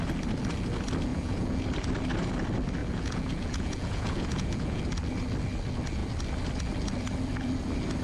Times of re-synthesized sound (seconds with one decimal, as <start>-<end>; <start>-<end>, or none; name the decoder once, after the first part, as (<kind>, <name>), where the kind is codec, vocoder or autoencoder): 1.1-1.6 (vocoder, Vocos); 2.8-4.8